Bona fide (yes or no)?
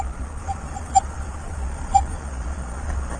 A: no